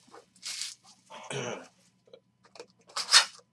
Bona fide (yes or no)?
yes